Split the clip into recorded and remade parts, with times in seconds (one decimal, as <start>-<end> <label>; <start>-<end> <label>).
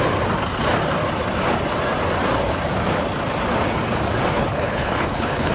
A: 0.0-4.3 recorded; 4.3-5.5 remade